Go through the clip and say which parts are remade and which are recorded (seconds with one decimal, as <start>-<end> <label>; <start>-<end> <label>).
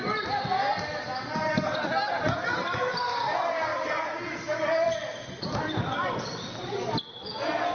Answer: 0.0-7.7 recorded